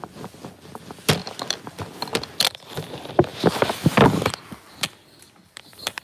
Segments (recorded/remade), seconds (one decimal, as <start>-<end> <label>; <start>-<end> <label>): 0.0-6.0 recorded